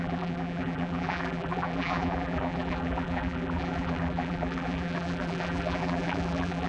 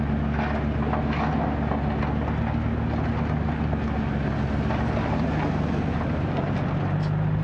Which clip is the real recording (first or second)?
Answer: second